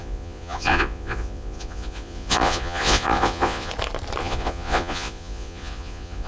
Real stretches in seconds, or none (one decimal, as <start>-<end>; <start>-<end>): 3.7-4.2